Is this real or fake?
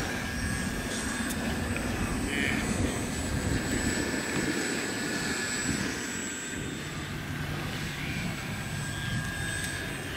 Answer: real